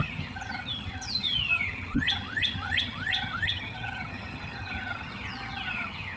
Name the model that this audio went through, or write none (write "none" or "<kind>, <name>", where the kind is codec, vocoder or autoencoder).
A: vocoder, HiFi-GAN